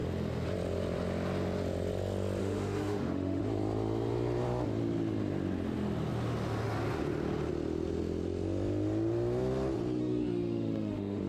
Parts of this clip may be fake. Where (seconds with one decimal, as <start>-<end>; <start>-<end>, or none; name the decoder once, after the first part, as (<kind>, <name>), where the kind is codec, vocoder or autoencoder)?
2.4-3.4 (autoencoder, DAC-VAE); 10.0-11.3